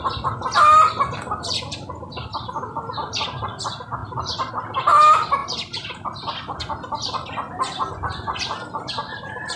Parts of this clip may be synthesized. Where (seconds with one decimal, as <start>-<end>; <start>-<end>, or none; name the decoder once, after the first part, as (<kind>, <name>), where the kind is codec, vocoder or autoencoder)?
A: none